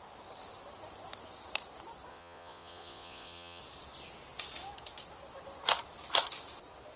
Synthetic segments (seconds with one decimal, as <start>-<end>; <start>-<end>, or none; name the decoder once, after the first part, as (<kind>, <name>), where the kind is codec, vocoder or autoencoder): 2.1-3.6 (vocoder, Vocos)